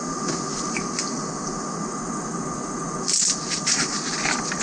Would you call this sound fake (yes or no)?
no